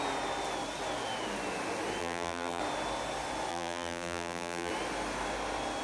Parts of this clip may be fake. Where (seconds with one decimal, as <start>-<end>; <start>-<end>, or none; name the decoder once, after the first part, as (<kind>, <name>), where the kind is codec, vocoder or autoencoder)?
2.0-2.6 (vocoder, BigVGAN v2); 3.5-4.7